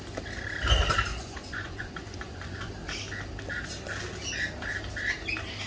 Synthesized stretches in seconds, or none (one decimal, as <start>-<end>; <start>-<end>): 1.1-2.7